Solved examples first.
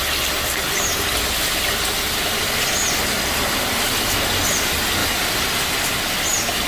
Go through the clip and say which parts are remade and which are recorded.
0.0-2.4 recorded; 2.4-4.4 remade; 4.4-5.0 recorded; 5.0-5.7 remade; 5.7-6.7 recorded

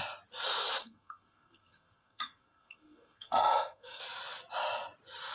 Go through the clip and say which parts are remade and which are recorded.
0.0-0.8 recorded; 0.8-4.0 remade; 4.0-5.3 recorded

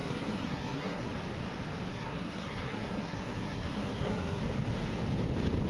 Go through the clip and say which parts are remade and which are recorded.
0.0-1.1 remade; 1.1-1.9 recorded; 1.9-4.4 remade; 4.4-5.7 recorded

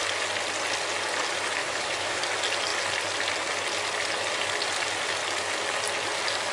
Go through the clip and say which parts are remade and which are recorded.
0.0-1.6 recorded; 1.6-2.2 remade; 2.2-6.5 recorded

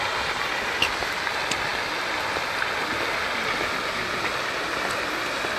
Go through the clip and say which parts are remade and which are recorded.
0.0-5.6 recorded